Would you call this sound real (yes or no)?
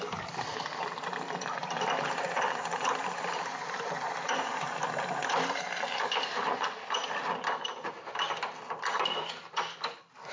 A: no